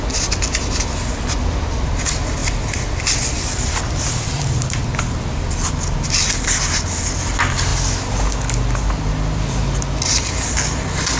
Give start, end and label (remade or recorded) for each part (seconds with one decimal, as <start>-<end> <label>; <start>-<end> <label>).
0.0-2.4 recorded; 2.4-5.9 remade; 5.9-11.2 recorded